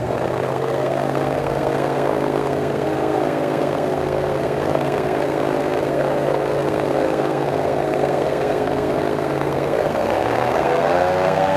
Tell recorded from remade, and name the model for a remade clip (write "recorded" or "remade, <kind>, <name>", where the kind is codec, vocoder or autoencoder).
remade, codec, SNAC